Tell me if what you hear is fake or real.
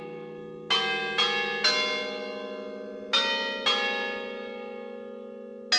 real